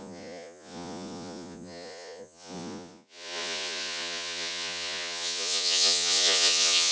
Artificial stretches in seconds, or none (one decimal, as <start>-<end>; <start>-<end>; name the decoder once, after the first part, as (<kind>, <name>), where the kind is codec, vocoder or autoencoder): 0.0-6.9 (vocoder, Vocos)